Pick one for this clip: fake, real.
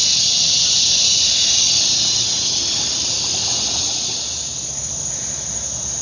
real